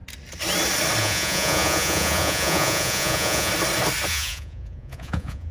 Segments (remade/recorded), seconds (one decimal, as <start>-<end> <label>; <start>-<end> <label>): 0.0-1.0 recorded; 1.0-3.5 remade; 3.5-4.1 recorded; 4.1-5.5 remade